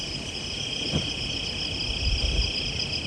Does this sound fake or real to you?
real